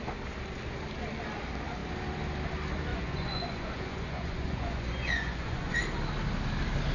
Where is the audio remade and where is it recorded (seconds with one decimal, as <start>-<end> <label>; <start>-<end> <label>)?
0.0-2.9 recorded; 2.9-5.8 remade; 5.8-6.9 recorded